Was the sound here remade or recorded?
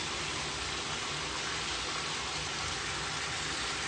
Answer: recorded